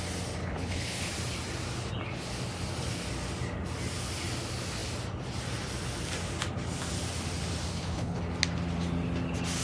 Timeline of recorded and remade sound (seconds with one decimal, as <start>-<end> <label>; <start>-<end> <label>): 0.0-0.4 recorded; 0.4-1.1 remade; 1.1-7.7 recorded; 7.7-8.2 remade; 8.2-9.6 recorded